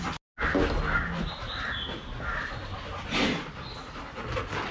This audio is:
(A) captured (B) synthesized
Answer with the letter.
A